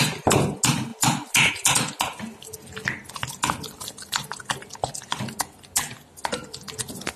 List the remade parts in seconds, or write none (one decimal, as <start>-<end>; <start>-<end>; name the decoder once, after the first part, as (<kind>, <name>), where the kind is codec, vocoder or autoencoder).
none